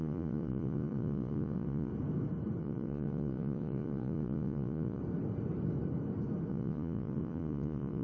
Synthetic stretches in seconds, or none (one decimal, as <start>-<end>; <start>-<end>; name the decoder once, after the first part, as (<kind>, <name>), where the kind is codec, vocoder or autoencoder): 0.0-1.9 (vocoder, Vocos); 2.6-5.0; 6.5-8.0